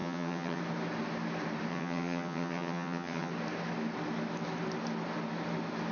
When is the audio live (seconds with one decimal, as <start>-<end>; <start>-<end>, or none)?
0.6-1.7; 3.3-5.9